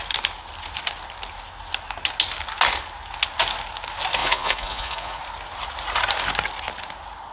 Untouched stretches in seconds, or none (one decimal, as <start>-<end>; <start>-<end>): 0.0-4.2; 5.2-7.3